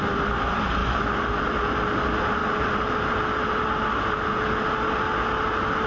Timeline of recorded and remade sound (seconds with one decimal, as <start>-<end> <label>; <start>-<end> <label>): 0.0-5.9 recorded